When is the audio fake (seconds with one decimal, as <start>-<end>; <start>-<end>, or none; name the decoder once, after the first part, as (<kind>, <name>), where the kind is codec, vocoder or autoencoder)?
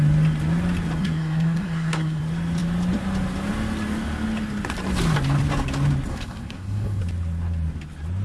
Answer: 1.0-2.2 (codec, SNAC); 6.1-7.0